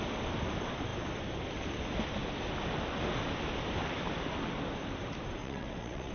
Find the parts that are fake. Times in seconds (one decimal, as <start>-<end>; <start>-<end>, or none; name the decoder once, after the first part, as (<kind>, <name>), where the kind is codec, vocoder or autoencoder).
5.4-6.1 (vocoder, WaveNeXt)